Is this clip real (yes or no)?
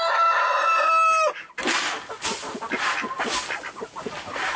yes